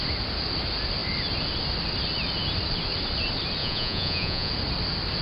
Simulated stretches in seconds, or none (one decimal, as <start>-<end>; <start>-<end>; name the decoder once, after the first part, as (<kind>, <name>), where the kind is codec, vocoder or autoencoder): 3.6-4.5 (vocoder, Vocos)